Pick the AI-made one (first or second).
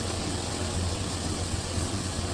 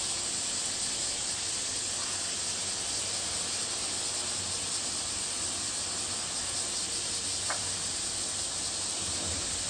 first